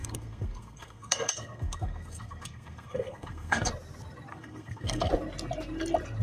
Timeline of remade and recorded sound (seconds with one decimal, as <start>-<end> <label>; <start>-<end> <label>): 0.0-3.7 remade; 3.7-4.3 recorded; 4.3-5.1 remade; 5.1-6.2 recorded